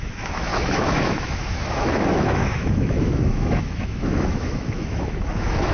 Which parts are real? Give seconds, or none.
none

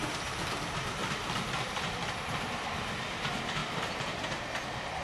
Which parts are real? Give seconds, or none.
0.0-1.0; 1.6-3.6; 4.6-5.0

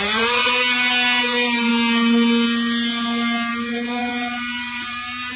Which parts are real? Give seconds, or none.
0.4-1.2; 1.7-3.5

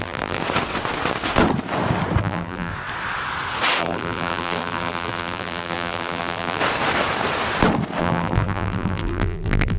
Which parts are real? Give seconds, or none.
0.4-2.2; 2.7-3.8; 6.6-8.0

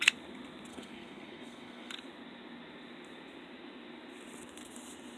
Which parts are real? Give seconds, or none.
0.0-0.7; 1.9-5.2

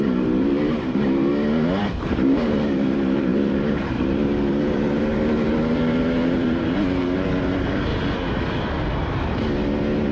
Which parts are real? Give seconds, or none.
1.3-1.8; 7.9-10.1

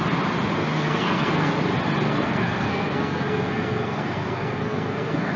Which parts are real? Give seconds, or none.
0.0-0.7; 1.5-2.0